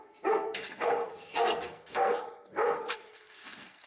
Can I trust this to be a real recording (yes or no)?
no